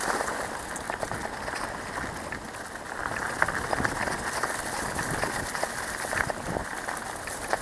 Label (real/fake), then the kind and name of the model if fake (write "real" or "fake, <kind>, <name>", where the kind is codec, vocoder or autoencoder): real